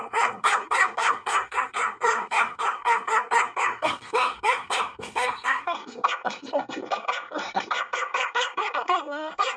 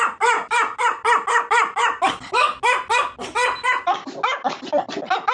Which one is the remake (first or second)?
first